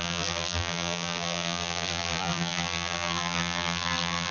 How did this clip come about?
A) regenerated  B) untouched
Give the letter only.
A